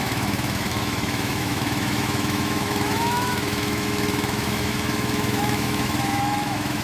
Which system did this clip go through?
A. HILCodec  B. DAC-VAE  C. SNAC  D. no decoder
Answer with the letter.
B